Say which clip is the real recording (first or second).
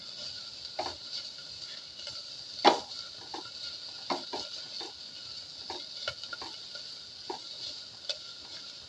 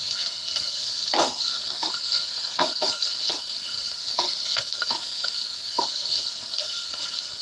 first